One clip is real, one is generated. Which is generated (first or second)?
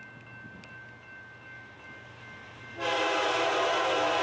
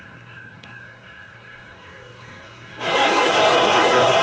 second